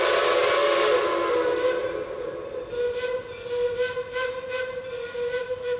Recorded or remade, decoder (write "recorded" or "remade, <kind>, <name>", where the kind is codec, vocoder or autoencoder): recorded